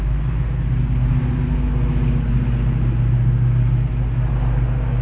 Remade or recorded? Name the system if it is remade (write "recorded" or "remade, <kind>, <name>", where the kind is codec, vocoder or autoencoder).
recorded